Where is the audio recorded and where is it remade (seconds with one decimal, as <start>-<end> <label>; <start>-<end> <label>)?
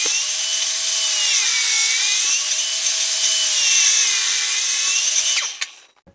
0.0-6.1 recorded